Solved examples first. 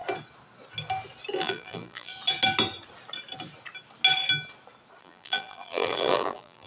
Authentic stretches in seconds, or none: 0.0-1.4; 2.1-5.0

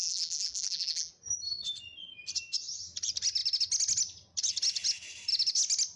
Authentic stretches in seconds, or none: 1.1-6.0

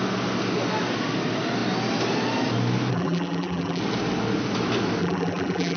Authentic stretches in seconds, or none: 0.0-2.9; 3.8-5.0

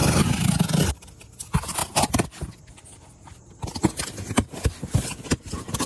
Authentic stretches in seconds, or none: 0.9-1.8; 2.5-5.9

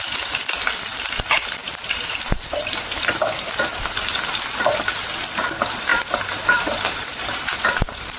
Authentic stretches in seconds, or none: 0.0-1.6; 3.1-5.9; 7.6-8.2

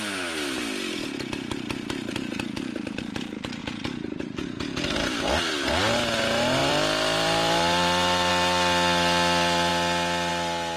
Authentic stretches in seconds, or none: 0.0-3.6; 5.2-6.6; 8.3-10.8

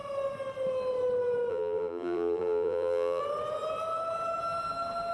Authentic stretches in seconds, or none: 0.0-1.5; 3.2-5.1

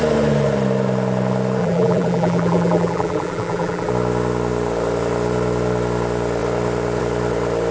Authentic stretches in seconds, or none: 0.0-1.6; 3.9-7.7